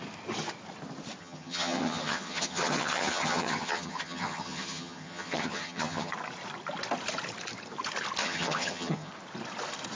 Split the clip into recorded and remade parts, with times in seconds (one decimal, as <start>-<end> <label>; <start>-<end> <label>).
0.0-1.2 recorded; 1.2-6.1 remade; 6.1-8.2 recorded; 8.2-9.1 remade; 9.1-10.0 recorded